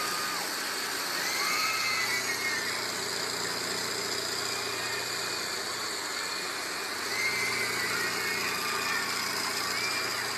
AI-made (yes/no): no